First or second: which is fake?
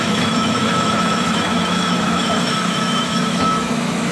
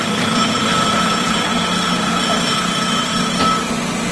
first